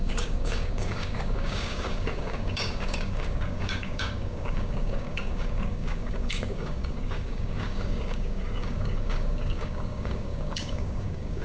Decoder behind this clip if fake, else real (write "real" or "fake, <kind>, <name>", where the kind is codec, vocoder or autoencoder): fake, codec, DAC